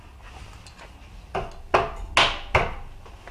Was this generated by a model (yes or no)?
no